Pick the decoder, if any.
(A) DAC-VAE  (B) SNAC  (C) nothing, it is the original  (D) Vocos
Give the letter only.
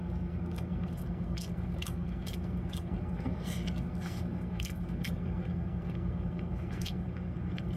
B